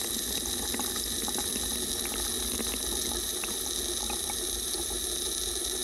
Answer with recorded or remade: recorded